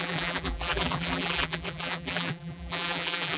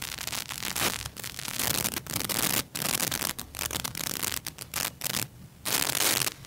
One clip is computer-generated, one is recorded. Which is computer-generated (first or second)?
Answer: first